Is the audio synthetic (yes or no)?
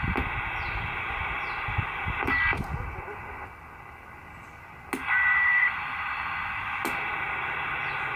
no